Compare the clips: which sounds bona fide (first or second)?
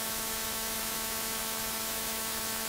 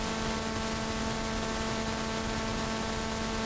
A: second